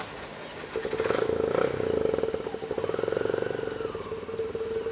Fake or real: real